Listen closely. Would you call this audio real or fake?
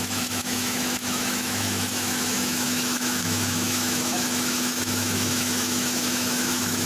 fake